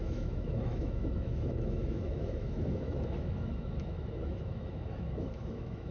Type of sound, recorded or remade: remade